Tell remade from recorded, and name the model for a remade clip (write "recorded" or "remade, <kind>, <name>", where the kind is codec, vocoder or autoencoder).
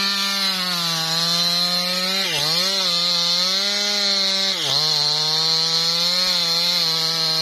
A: recorded